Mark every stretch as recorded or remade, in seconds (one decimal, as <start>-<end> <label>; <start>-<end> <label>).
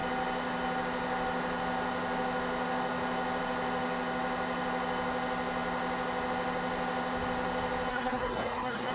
0.0-7.9 recorded; 7.9-8.9 remade